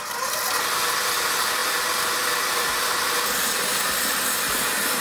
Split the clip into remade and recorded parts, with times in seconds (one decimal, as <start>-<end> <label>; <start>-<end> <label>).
0.0-5.0 recorded